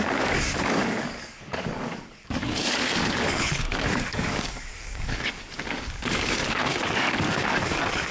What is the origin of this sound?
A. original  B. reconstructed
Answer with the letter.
B